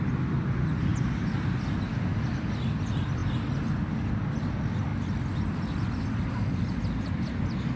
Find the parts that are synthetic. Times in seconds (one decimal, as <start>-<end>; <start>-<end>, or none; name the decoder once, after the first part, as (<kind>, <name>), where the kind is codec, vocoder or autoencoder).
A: none